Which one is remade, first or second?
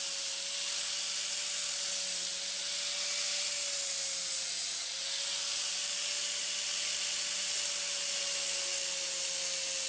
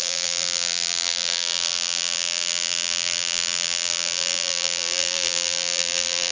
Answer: second